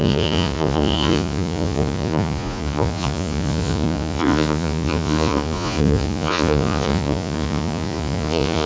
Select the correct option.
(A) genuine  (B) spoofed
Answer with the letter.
B